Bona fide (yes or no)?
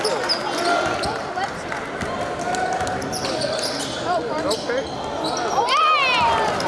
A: yes